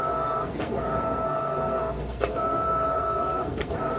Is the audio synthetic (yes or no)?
yes